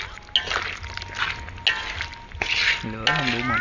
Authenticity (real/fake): real